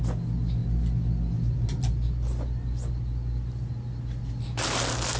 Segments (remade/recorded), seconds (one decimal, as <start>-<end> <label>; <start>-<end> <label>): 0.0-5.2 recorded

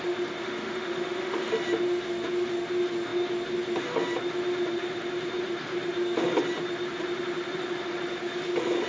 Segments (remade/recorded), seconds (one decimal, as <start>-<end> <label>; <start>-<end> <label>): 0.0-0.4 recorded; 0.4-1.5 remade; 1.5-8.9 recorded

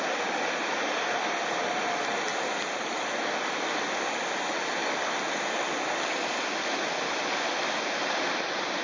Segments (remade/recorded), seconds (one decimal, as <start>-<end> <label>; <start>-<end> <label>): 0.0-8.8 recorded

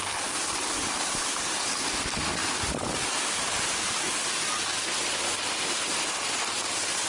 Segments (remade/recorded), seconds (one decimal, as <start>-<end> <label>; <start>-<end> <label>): 0.0-7.1 recorded

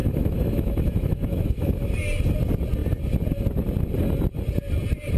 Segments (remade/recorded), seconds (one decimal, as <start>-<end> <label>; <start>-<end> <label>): 0.0-1.9 remade; 1.9-5.2 recorded

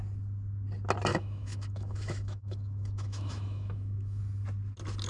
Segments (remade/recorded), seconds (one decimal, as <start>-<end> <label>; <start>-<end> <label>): 0.0-1.1 recorded; 1.1-4.2 remade; 4.2-5.1 recorded

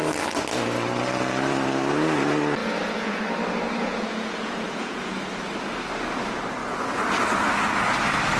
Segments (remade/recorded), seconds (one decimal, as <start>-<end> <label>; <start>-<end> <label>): 0.0-2.6 recorded; 2.6-3.2 remade; 3.2-3.8 recorded; 3.8-5.2 remade; 5.2-8.4 recorded